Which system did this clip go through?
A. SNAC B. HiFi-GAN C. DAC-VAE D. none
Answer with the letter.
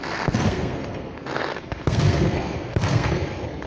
A